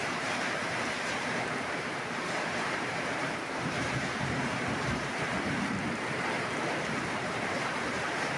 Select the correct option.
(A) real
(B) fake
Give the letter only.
B